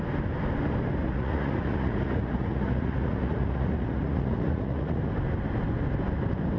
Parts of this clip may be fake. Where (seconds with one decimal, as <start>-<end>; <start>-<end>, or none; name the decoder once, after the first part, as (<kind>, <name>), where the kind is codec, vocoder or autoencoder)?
1.0-5.0 (vocoder, Vocos)